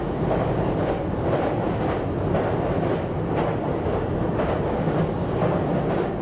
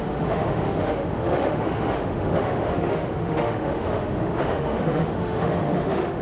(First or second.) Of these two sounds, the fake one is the second